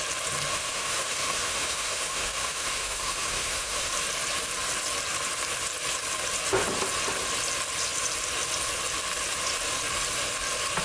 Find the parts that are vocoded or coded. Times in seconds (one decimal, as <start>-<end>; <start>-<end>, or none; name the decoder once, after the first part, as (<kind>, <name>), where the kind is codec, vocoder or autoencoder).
0.5-3.9 (autoencoder, DAC-VAE)